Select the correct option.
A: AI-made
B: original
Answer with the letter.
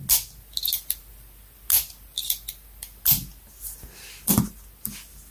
B